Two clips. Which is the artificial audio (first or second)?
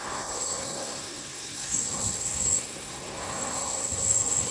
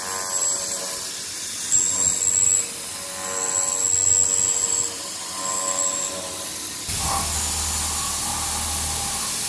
first